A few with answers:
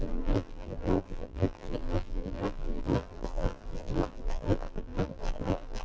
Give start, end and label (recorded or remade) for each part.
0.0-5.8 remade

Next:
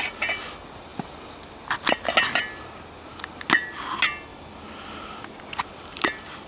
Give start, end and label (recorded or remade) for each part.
0.0-4.3 recorded; 4.3-6.5 remade

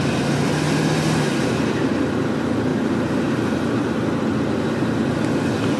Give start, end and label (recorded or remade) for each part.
0.0-2.7 recorded; 2.7-4.0 remade; 4.0-5.8 recorded

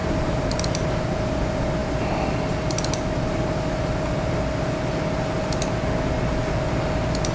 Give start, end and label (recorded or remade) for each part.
0.0-0.5 remade; 0.5-7.3 recorded